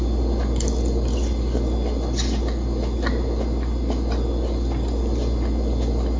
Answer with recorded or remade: recorded